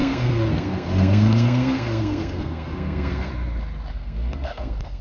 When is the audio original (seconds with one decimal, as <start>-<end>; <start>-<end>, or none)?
3.3-3.9